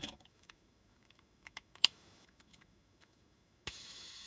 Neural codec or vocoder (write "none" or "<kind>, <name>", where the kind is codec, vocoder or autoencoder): autoencoder, DAC-VAE